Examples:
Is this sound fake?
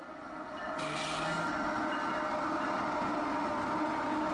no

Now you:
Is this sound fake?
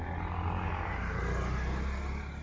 no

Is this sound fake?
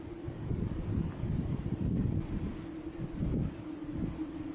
no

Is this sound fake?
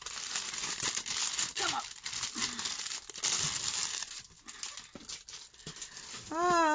no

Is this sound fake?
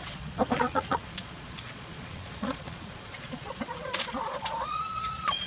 yes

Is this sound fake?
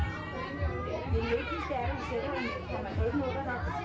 no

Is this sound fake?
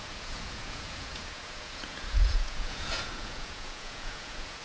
yes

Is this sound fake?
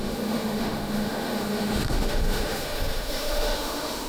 yes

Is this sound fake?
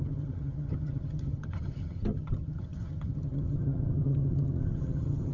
yes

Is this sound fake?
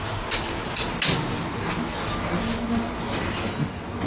no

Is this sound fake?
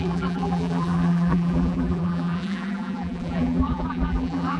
yes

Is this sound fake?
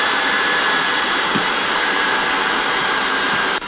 yes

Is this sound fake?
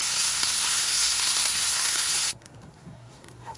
yes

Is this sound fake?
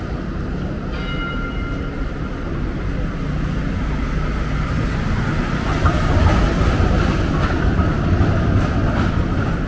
no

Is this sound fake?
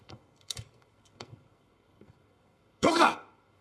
yes